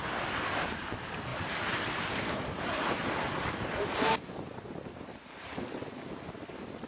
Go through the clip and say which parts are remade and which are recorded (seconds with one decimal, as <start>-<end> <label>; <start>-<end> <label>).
0.0-1.3 recorded; 1.3-2.0 remade; 2.0-6.9 recorded